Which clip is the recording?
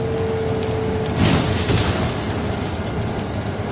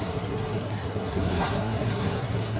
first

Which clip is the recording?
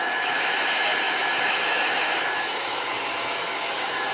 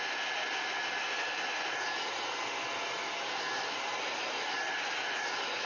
second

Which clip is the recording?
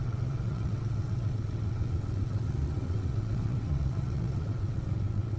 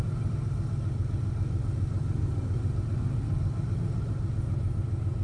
second